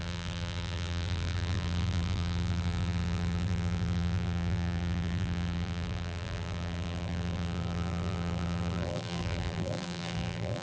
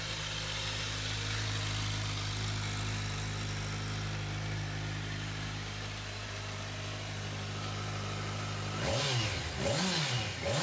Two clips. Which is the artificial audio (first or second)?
first